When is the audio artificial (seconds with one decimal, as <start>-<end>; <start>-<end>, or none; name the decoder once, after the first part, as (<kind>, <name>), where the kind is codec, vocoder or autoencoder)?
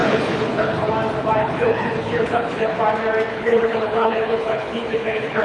0.0-0.9 (codec, HILCodec); 1.4-2.8; 3.3-5.4